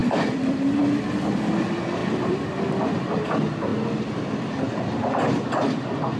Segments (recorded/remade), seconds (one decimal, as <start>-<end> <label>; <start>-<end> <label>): 0.0-0.8 remade; 0.8-2.0 recorded; 2.0-3.0 remade; 3.0-6.2 recorded